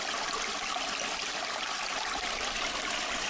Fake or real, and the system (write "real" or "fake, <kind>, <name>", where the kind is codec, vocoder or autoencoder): real